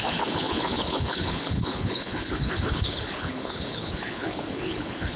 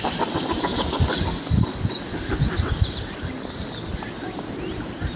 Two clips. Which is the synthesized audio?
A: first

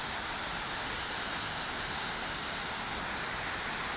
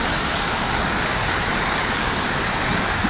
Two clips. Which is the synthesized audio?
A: second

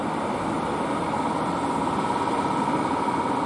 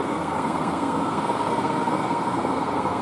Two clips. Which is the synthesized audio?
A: second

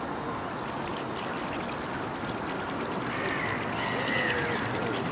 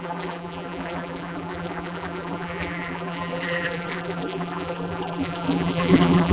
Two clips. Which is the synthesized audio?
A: second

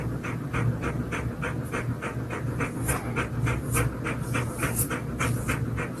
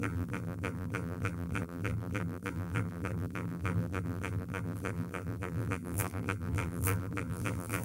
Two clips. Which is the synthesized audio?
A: second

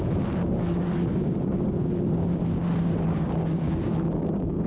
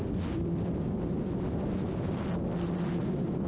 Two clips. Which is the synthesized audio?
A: first